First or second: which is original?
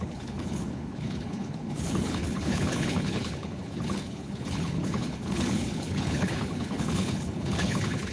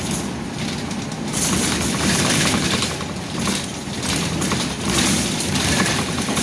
second